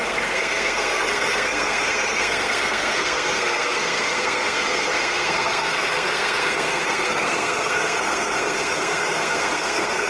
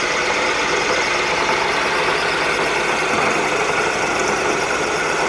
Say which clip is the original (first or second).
second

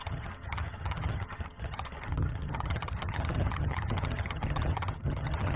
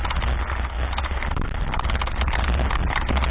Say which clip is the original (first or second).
second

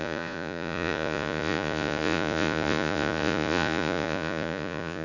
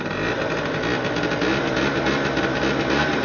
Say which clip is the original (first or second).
second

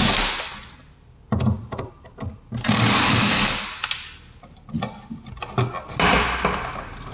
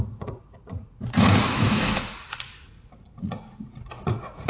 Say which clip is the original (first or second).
first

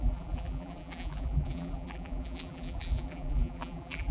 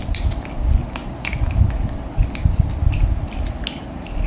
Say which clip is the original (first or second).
second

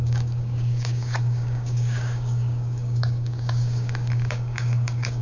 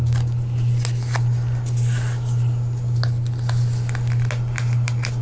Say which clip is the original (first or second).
second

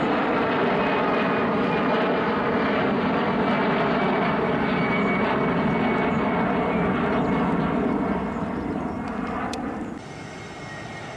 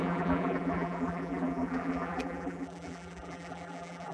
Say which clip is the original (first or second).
first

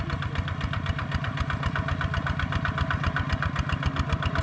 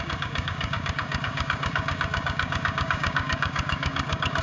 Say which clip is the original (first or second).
first